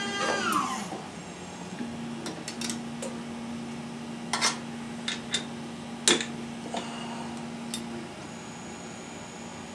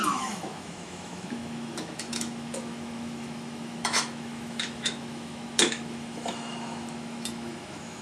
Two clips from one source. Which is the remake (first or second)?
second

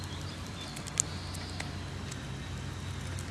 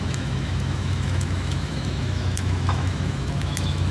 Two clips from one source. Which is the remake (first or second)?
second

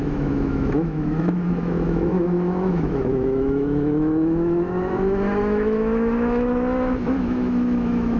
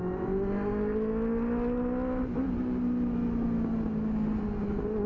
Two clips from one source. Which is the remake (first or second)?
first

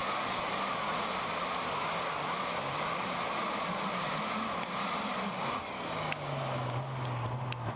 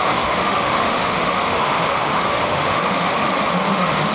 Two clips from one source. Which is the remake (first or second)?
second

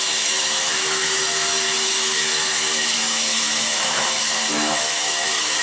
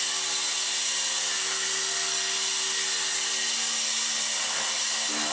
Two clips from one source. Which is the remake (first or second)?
first